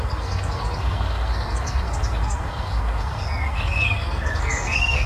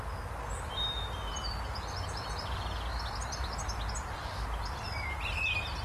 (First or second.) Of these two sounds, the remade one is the first